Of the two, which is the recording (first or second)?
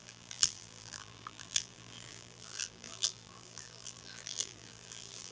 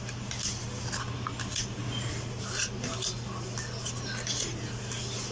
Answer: second